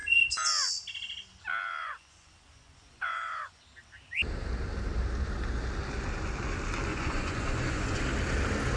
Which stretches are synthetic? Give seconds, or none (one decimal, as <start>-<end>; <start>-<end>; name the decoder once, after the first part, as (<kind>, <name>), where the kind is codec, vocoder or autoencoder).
0.0-0.5 (vocoder, Vocos); 1.8-3.6; 6.9-8.0